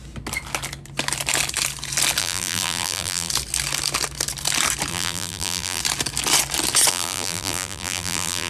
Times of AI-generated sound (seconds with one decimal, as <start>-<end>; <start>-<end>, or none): 2.2-3.3; 4.9-5.8; 6.9-8.5